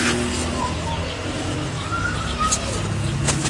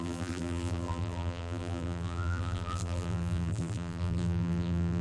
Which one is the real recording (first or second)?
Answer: first